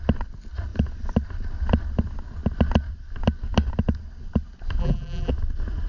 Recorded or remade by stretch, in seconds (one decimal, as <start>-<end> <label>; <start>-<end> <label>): 0.0-4.8 recorded; 4.8-5.3 remade; 5.3-5.9 recorded